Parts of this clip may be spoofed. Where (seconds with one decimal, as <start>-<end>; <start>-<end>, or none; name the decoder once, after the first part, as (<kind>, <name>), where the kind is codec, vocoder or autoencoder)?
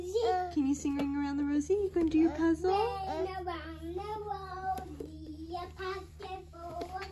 4.1-6.2 (vocoder, BigVGAN v2)